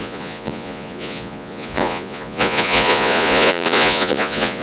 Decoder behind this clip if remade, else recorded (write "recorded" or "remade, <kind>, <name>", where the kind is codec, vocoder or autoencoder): remade, vocoder, Vocos